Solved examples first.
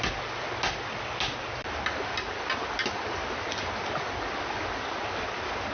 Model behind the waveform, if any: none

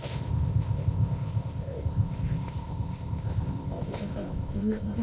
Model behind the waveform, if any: codec, ZipCodec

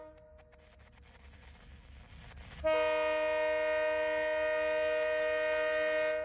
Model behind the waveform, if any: none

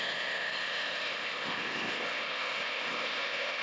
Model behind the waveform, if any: codec, ZipCodec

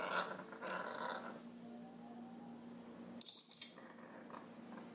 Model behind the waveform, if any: none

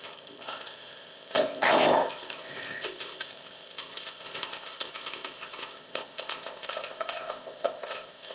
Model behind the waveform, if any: codec, ZipCodec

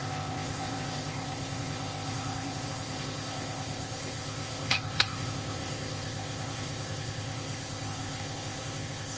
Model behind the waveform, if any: codec, ZipCodec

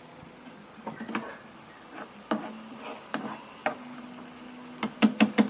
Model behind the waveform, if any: none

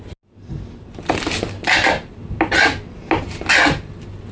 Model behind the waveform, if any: none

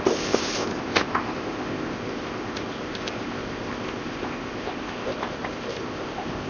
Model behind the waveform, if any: codec, ZipCodec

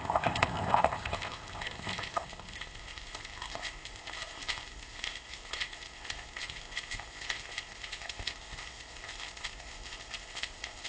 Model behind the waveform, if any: codec, ZipCodec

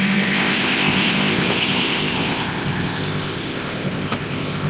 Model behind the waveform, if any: codec, ZipCodec